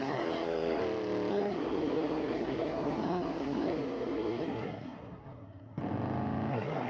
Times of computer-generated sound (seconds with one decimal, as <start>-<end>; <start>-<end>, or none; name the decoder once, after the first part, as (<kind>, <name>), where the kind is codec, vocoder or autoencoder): 0.0-0.8 (codec, SNAC); 1.3-5.8; 6.5-6.9